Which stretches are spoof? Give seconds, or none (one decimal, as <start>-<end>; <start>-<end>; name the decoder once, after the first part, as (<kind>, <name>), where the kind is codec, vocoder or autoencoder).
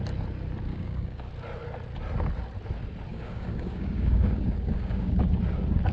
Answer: 0.7-1.3 (codec, DAC); 3.1-5.2